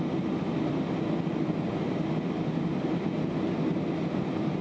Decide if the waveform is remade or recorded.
recorded